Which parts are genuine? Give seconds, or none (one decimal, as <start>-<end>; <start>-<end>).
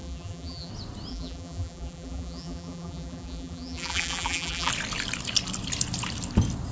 0.7-1.1; 4.7-6.7